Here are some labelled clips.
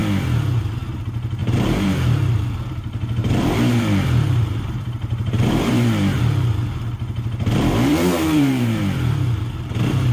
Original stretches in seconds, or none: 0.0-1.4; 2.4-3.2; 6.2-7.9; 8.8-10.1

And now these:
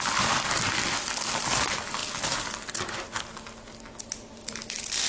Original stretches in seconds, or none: 0.0-5.1

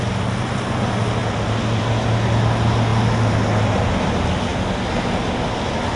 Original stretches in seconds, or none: 0.0-6.0